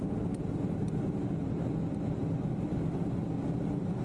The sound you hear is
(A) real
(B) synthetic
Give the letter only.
A